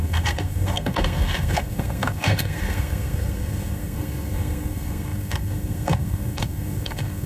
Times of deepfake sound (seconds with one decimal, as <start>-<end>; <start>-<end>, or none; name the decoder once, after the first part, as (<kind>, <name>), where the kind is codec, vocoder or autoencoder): 0.0-7.3 (codec, SNAC)